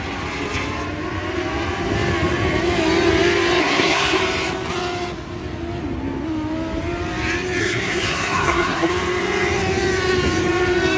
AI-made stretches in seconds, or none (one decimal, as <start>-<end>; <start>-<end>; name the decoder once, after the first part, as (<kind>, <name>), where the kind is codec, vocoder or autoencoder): 3.6-4.2 (codec, SNAC); 7.6-8.9